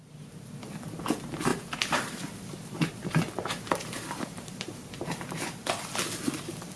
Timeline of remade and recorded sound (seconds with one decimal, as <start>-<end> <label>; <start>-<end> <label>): 0.0-1.5 recorded; 1.5-5.6 remade; 5.6-6.8 recorded